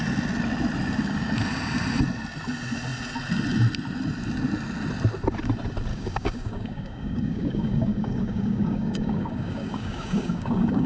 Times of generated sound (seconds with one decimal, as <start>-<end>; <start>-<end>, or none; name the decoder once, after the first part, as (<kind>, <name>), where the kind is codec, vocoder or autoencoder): 5.9-10.9 (codec, DAC)